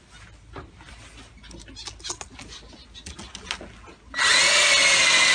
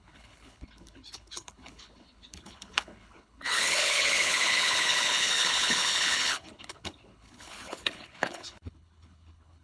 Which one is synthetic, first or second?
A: second